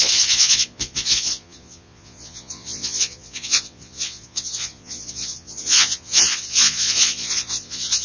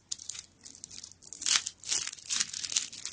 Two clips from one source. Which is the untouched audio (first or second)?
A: second